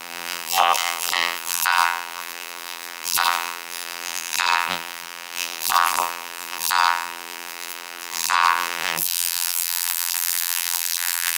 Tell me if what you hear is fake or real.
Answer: fake